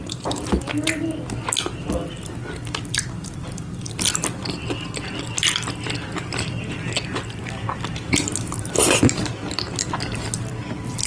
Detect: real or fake real